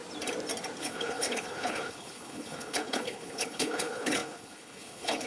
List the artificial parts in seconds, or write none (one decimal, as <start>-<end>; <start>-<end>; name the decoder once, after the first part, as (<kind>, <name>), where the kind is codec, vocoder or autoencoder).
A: 0.8-5.3 (codec, HILCodec)